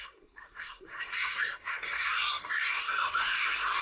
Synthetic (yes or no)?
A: yes